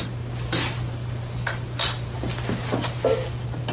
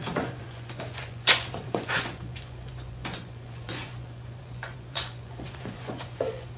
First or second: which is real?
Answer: first